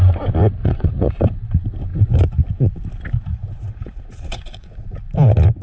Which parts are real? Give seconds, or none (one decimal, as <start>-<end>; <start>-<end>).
0.0-0.6; 1.1-3.3; 5.0-5.6